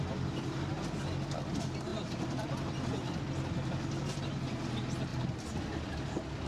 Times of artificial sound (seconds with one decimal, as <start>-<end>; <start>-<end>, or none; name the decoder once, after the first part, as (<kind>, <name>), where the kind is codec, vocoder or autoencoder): 1.9-3.1 (vocoder, BigVGAN v2); 5.1-6.5